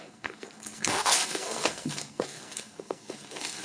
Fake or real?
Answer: fake